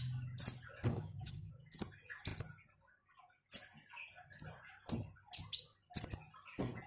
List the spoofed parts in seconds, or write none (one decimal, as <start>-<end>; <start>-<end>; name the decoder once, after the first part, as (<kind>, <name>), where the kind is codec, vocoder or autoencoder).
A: 0.9-1.5 (codec, DAC)